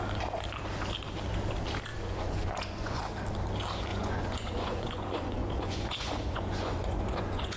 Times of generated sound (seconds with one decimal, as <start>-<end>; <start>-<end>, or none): 1.9-3.0; 3.9-7.6